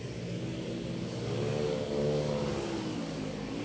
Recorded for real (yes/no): no